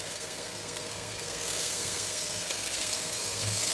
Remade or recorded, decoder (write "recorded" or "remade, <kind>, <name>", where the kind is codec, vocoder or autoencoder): remade, codec, SNAC